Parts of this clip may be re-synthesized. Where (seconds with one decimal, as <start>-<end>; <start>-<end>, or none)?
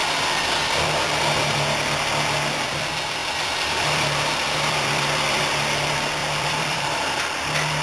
0.0-1.2; 3.2-5.4; 6.2-7.2